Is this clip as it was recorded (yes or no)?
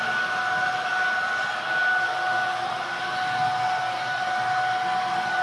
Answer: yes